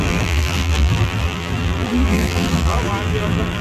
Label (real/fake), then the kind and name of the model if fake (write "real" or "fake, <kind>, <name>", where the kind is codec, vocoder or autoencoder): fake, vocoder, BigVGAN v2